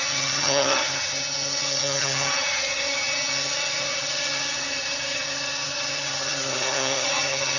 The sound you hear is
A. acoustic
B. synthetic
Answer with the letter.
B